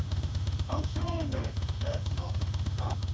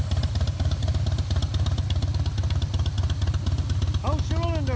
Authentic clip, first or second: second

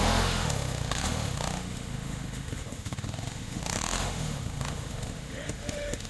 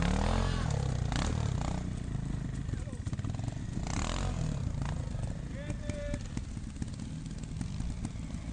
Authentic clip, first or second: second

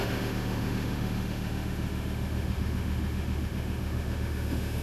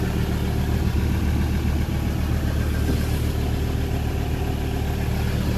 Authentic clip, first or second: second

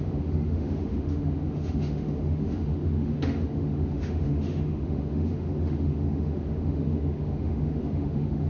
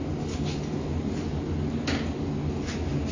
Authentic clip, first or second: second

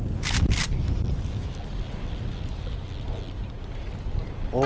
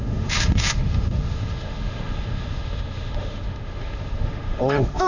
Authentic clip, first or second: first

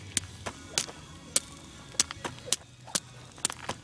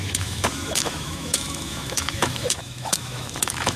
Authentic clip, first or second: first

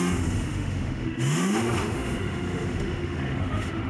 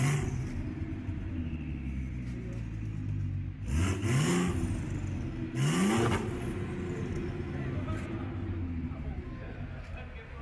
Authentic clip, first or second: second